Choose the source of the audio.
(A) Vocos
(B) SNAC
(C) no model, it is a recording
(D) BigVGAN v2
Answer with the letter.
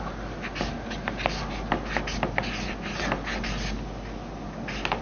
C